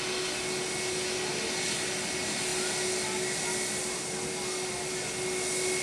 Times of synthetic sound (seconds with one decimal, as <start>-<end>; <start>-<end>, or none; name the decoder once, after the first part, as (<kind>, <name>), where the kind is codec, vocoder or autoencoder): none